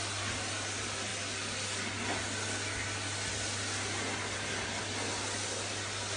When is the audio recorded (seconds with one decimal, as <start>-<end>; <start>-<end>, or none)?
0.0-6.2